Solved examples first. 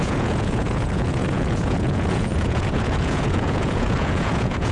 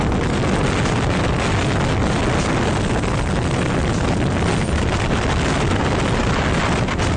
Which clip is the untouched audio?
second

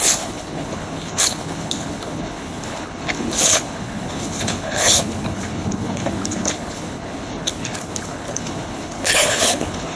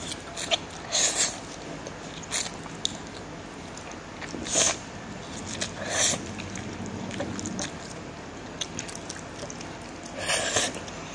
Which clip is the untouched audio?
second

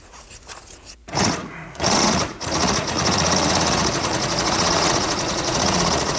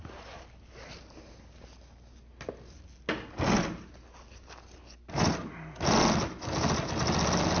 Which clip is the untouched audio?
second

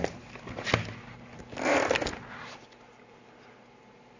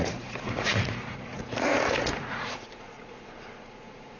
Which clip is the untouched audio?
first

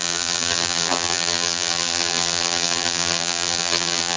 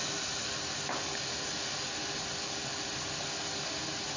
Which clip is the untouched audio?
second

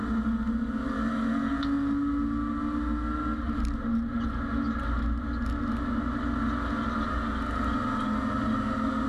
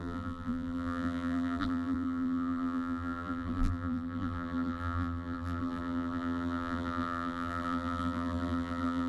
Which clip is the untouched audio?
first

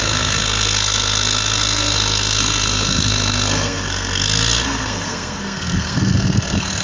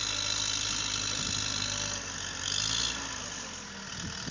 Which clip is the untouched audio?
second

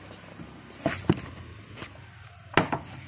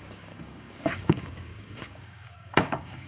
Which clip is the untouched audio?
first